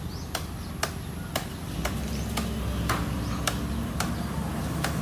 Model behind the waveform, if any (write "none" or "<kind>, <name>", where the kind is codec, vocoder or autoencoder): none